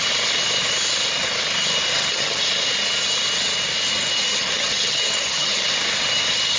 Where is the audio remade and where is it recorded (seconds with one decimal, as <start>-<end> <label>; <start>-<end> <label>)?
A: 0.0-1.9 recorded; 1.9-2.4 remade; 2.4-4.3 recorded; 4.3-5.7 remade; 5.7-6.6 recorded

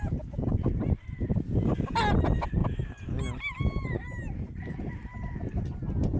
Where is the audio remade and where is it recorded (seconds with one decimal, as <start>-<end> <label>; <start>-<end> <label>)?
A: 0.0-6.2 recorded